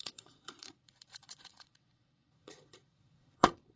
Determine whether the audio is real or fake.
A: fake